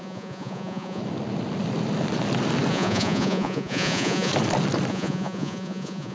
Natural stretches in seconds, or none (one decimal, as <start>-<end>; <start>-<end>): 1.0-2.7; 4.3-4.9